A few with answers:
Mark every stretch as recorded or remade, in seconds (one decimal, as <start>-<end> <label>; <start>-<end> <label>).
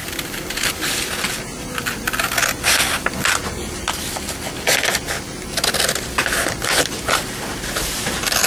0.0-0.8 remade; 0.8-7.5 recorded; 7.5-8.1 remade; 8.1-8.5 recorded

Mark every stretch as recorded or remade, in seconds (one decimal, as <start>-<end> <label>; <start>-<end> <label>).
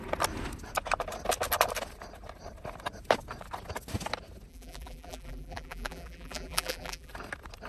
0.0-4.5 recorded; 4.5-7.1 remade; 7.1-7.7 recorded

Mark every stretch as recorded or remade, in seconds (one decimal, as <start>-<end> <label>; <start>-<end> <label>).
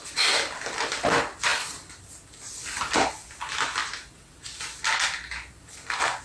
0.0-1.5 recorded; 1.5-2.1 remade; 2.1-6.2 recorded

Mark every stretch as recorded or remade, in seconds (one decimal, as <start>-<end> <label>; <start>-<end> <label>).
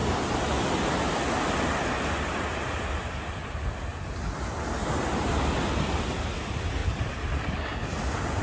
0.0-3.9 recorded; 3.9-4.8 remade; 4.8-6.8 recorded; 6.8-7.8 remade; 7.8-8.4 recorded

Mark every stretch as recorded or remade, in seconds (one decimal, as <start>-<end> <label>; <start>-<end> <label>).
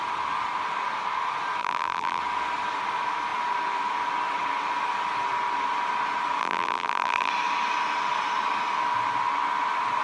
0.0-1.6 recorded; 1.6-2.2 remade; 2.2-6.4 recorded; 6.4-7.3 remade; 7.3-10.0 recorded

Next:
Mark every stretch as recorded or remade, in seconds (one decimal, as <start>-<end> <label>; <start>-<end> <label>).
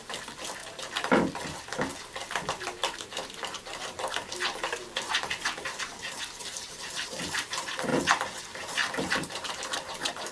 0.0-0.6 remade; 0.6-2.0 recorded; 2.0-7.9 remade; 7.9-8.4 recorded; 8.4-10.3 remade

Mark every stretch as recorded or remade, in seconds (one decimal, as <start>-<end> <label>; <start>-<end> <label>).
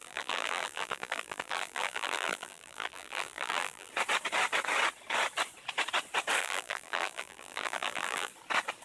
0.0-3.9 remade; 3.9-6.4 recorded; 6.4-8.3 remade; 8.3-8.8 recorded